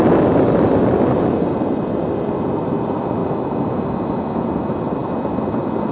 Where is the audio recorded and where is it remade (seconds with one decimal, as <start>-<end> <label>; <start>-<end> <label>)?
0.0-5.9 recorded